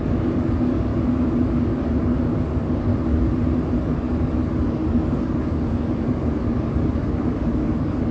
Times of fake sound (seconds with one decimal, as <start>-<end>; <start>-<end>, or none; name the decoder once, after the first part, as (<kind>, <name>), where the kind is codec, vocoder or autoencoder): 0.0-0.9 (codec, DAC); 1.7-2.9; 3.8-8.1